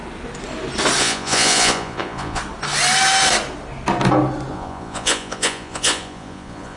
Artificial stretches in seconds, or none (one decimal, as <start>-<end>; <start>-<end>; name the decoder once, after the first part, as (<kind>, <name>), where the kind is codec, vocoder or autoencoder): 1.0-2.4 (vocoder, Vocos); 4.5-6.8